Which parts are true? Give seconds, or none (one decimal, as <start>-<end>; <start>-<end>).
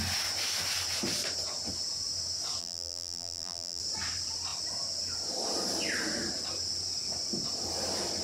0.0-2.6; 3.8-8.2